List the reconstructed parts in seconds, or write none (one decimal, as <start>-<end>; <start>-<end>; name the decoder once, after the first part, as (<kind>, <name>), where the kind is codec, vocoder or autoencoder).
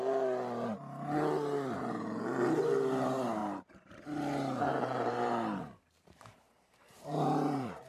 3.4-3.9 (vocoder, BigVGAN v2); 4.7-7.9